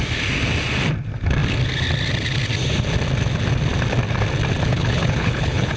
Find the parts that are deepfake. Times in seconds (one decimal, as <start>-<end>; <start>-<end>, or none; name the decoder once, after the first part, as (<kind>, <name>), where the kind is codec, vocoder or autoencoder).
4.7-5.8 (codec, HILCodec)